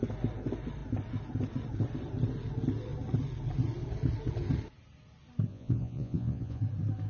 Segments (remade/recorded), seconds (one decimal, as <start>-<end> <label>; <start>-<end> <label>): 0.0-5.5 recorded; 5.5-6.6 remade; 6.6-7.1 recorded